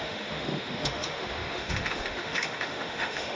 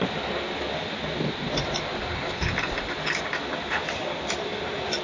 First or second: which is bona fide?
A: second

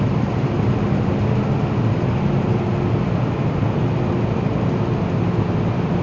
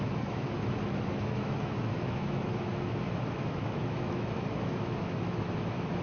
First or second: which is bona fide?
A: first